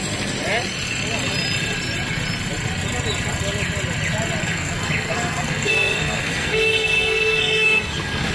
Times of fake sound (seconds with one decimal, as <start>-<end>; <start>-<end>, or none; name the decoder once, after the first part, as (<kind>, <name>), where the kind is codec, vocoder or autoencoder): 4.4-8.3 (codec, SNAC)